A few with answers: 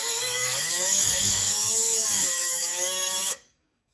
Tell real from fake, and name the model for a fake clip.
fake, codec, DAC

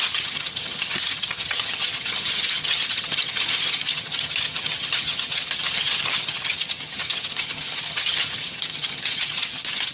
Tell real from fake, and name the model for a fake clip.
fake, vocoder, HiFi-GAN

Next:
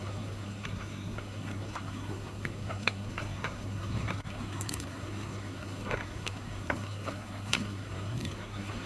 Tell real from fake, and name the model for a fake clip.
fake, codec, SNAC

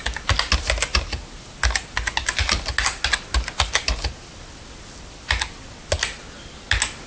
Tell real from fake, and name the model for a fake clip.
real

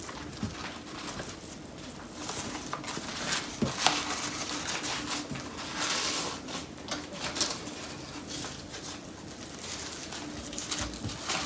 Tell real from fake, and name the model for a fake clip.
real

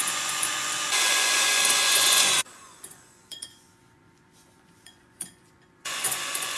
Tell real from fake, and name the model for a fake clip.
fake, vocoder, Vocos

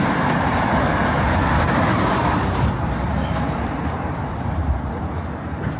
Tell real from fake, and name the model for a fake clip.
fake, vocoder, BigVGAN v2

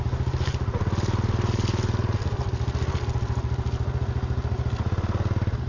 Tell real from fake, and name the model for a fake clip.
real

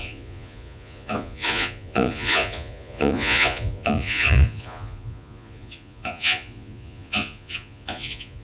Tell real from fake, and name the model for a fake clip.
fake, vocoder, Vocos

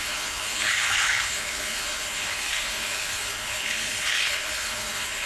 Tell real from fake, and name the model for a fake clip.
fake, codec, HILCodec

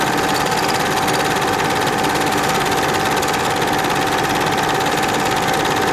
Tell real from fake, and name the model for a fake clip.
real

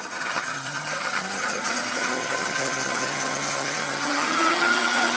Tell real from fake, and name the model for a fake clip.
fake, vocoder, HiFi-GAN